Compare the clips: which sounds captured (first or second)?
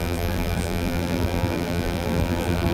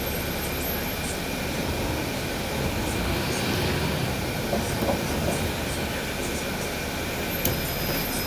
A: second